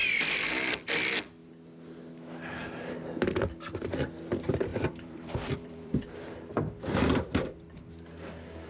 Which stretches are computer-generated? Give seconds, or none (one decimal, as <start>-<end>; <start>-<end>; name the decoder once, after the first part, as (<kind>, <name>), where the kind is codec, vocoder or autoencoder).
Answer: 4.7-6.0 (vocoder, BigVGAN v2)